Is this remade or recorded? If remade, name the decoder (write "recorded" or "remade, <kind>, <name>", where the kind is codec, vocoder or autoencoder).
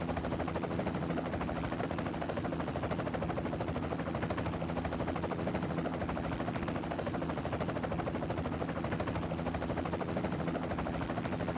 recorded